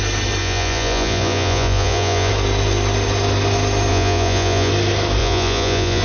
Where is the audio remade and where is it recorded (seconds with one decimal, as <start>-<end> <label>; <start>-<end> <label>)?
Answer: 0.0-0.4 recorded; 0.4-2.3 remade; 2.3-3.9 recorded; 3.9-4.7 remade; 4.7-5.2 recorded; 5.2-6.0 remade